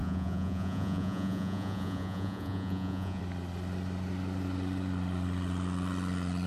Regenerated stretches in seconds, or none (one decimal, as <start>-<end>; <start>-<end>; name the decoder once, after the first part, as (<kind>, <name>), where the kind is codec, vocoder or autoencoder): 0.0-3.2 (vocoder, Vocos)